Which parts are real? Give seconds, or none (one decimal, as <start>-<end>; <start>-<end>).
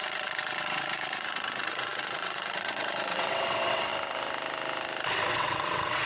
3.9-5.3